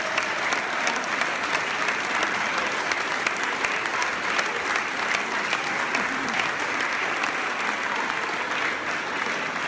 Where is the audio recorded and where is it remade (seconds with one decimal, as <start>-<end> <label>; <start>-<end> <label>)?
0.0-9.7 recorded